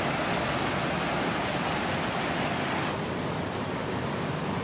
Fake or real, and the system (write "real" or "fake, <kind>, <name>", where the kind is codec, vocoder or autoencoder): real